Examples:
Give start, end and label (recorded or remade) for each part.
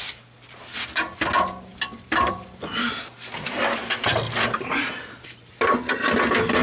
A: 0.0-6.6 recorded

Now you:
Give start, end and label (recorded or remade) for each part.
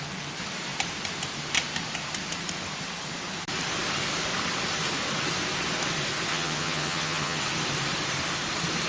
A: 0.0-6.3 recorded; 6.3-7.4 remade; 7.4-8.9 recorded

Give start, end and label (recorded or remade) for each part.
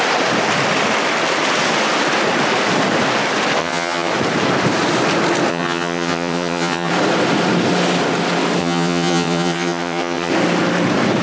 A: 0.0-3.6 recorded; 3.6-4.1 remade; 4.1-5.5 recorded; 5.5-6.9 remade; 6.9-8.6 recorded; 8.6-10.3 remade; 10.3-11.2 recorded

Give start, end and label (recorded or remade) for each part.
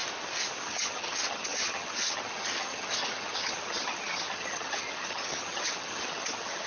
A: 0.0-0.6 recorded; 0.6-6.7 remade